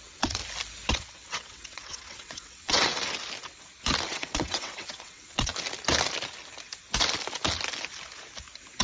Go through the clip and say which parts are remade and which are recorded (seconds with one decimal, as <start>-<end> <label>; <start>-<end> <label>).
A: 0.0-0.4 remade; 0.4-0.9 recorded; 0.9-2.9 remade; 2.9-4.1 recorded; 4.1-5.5 remade; 5.5-8.8 recorded